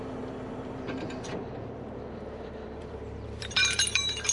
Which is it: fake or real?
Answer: fake